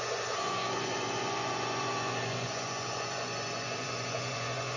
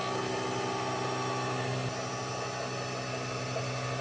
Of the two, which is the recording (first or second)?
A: second